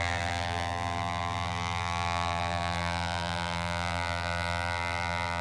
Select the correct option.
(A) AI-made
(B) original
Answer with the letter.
A